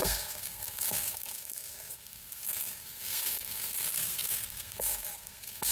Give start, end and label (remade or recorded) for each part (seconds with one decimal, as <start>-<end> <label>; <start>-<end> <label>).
0.0-5.7 remade